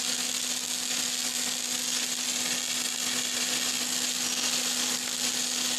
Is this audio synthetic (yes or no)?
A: no